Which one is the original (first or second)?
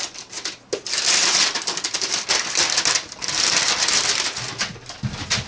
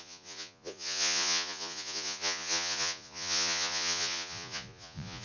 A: first